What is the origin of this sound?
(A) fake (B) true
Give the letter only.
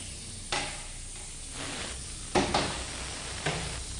B